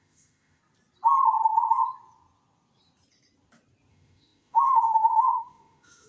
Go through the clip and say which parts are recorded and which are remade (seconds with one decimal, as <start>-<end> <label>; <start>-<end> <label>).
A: 0.0-0.6 remade; 0.6-3.9 recorded; 3.9-6.1 remade